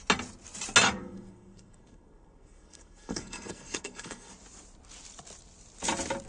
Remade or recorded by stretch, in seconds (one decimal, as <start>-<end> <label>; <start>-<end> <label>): 0.0-1.0 recorded; 1.0-4.3 remade; 4.3-6.3 recorded